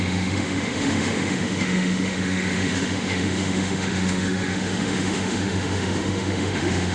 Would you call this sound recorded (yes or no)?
no